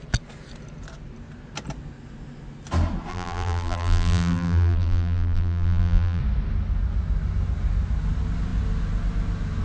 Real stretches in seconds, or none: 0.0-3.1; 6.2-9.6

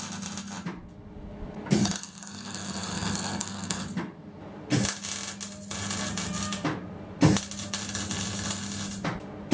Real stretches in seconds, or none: 0.0-1.8; 3.8-9.5

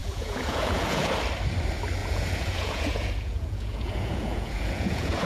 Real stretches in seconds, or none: 1.1-2.0